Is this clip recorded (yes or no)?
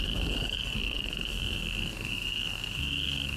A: no